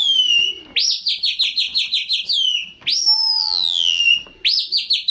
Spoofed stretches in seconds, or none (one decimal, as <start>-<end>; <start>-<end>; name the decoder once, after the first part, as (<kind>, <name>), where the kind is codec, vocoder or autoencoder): 3.4-4.0 (vocoder, BigVGAN v2)